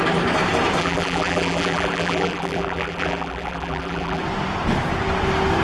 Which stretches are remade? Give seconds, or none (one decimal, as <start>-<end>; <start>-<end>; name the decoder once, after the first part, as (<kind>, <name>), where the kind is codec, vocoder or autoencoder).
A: 0.8-4.2 (vocoder, BigVGAN v2)